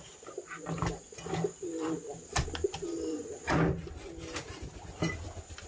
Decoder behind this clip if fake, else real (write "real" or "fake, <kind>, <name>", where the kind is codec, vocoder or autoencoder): real